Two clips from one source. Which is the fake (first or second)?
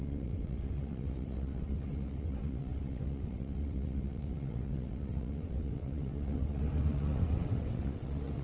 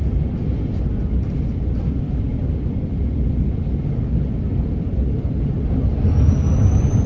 first